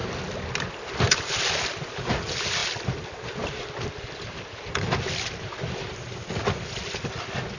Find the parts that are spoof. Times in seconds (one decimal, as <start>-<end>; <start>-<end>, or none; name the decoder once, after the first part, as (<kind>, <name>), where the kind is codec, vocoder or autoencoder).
none